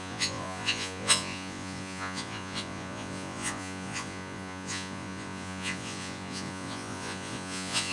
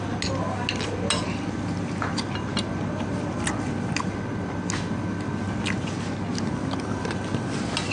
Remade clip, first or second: first